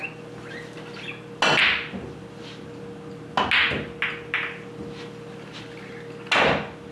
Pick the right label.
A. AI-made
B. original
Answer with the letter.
B